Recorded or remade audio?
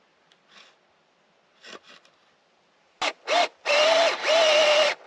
recorded